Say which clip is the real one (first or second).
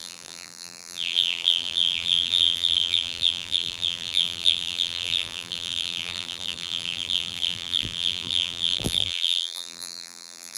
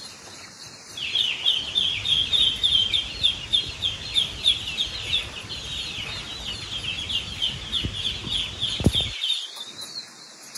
second